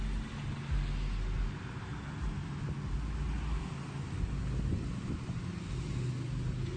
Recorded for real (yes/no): yes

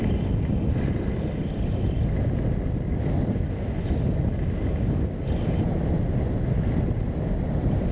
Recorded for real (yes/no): yes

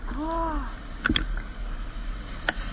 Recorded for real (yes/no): yes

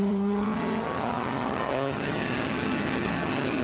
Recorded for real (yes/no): no